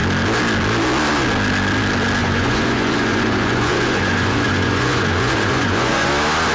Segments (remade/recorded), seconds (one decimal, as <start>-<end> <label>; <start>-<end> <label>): 0.0-2.2 recorded; 2.2-6.1 remade; 6.1-6.5 recorded